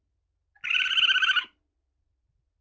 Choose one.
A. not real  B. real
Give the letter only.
B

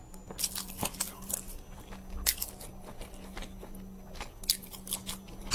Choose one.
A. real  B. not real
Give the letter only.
A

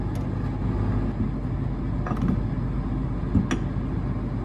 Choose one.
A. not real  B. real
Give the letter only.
B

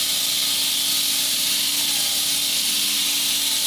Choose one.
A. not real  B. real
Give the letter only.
B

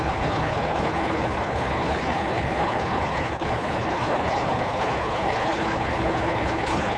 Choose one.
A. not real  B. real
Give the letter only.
A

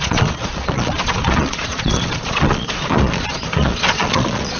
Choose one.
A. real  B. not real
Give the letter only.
B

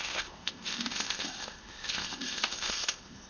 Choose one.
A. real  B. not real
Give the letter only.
B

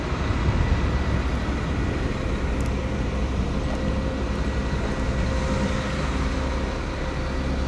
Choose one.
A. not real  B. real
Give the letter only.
B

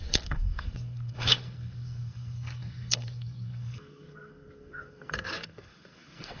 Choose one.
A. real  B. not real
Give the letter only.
B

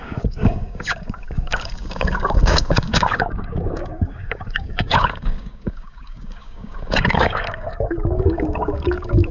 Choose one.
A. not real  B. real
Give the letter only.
A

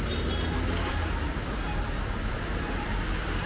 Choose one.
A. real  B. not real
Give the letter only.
A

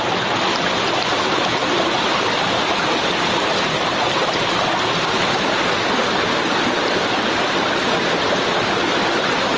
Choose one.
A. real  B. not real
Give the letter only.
A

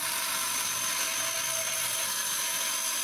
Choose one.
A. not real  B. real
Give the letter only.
B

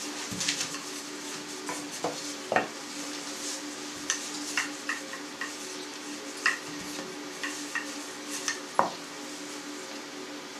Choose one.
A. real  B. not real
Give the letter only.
A